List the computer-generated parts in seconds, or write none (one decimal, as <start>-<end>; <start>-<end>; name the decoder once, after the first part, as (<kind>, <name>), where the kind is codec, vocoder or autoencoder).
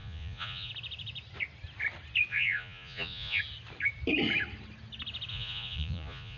0.0-0.7 (vocoder, Vocos); 2.3-3.4; 5.3-6.4